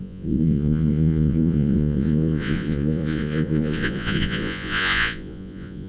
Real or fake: fake